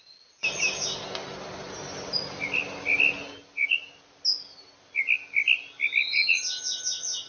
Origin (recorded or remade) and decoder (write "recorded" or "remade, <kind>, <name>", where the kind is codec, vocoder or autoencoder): recorded